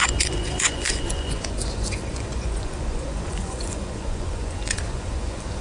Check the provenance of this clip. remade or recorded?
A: remade